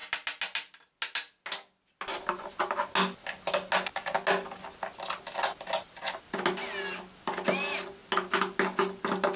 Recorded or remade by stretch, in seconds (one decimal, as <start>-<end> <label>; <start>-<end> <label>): 0.0-9.4 recorded